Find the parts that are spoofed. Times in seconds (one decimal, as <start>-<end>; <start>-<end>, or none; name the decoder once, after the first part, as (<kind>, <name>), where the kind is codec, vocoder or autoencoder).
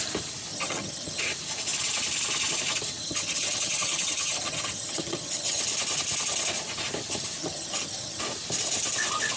0.5-1.2 (vocoder, HiFi-GAN); 3.0-5.6; 7.4-8.2